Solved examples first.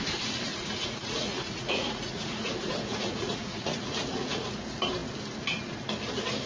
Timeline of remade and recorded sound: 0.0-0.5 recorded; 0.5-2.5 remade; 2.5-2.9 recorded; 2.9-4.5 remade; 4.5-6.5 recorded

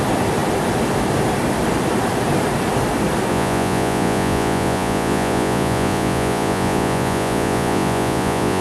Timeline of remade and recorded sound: 0.0-3.3 recorded; 3.3-8.6 remade